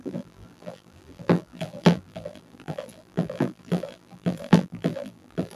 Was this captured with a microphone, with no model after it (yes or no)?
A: no